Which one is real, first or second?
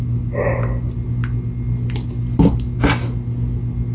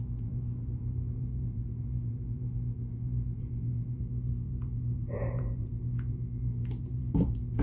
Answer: first